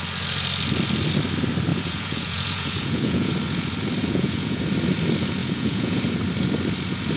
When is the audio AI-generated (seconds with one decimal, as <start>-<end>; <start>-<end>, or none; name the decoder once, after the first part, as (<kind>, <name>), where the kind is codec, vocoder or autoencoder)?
1.7-3.3 (vocoder, Vocos); 4.0-4.6; 5.4-6.0